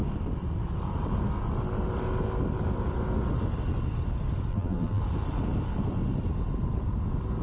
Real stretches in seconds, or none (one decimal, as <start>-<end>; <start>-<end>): 0.0-4.5; 5.0-7.4